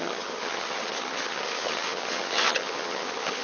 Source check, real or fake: fake